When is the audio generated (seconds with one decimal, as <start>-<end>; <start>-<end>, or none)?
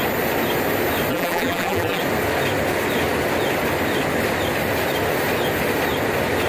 1.1-2.0